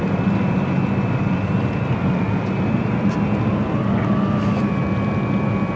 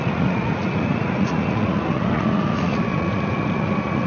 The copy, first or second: second